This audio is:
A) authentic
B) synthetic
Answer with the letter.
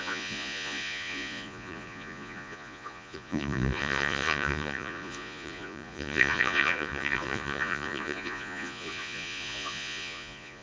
B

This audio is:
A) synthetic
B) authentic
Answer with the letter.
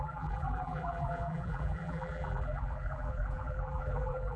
A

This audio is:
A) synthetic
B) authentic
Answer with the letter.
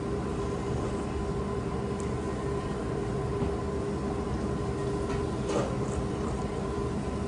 B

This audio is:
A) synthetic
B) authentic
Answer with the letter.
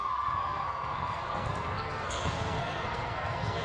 A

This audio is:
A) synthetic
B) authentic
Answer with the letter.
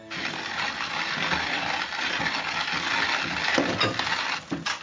B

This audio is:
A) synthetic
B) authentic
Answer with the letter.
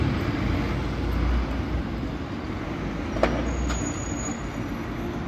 B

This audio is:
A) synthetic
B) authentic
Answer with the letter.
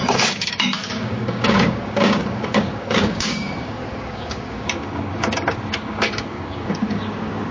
A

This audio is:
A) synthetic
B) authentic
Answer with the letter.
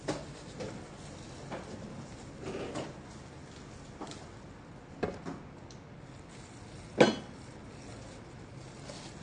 B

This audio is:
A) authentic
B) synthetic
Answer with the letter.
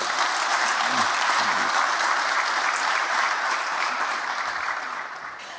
B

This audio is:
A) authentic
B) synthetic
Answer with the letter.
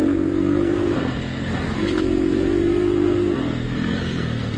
B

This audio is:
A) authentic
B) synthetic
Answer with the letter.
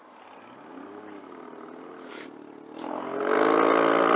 A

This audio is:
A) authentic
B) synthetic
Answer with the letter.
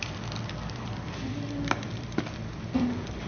B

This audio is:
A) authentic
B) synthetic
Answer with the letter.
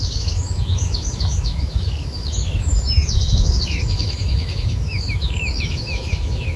B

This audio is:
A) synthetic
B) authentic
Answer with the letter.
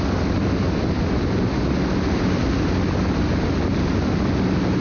B